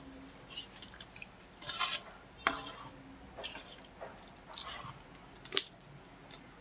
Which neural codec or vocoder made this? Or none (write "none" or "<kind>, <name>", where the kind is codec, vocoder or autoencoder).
none